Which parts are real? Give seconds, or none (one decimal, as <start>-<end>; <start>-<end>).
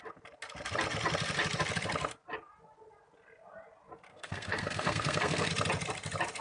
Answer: 0.0-4.1; 5.5-6.4